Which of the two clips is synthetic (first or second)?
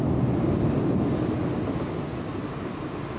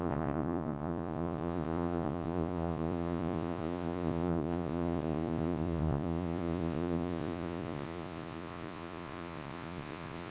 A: second